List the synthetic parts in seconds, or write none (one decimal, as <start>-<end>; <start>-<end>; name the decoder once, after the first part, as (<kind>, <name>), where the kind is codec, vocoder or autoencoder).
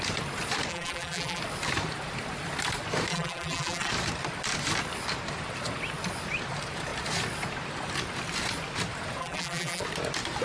0.7-1.4 (vocoder, BigVGAN v2); 3.1-3.9; 9.2-9.8